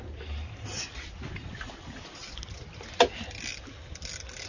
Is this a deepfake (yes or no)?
no